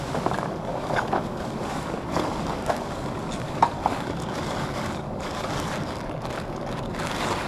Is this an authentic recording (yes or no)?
no